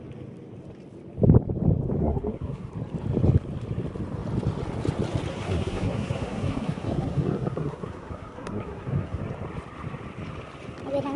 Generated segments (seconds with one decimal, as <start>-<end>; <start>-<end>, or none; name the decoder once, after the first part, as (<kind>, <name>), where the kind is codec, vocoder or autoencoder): 2.0-2.7 (codec, SNAC); 5.3-9.2